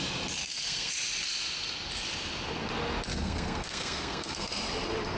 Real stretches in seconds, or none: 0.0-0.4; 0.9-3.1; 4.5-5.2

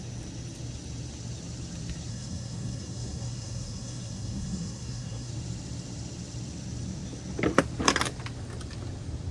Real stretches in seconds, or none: 0.0-2.1; 5.3-9.3

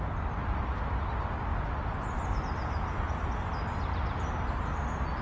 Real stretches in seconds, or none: 0.0-5.2

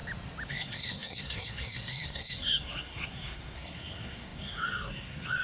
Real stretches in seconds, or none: 0.0-0.5

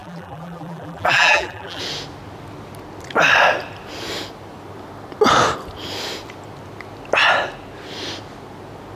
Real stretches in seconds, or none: 1.8-9.0

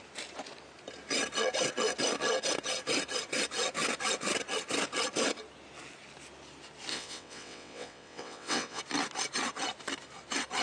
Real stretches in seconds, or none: 0.0-6.9; 8.8-10.6

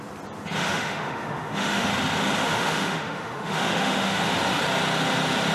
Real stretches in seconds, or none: 0.0-0.6; 1.9-2.4; 4.4-5.5

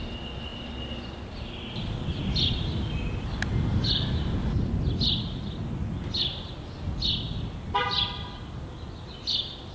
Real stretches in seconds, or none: 0.0-9.7